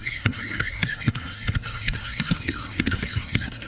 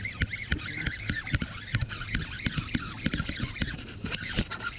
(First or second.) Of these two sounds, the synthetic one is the first